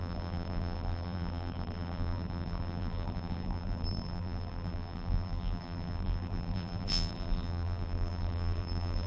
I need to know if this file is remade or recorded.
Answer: remade